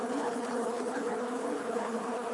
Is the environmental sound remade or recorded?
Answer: remade